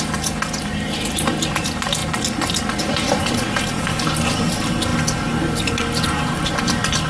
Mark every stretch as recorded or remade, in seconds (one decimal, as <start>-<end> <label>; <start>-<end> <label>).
0.0-7.1 recorded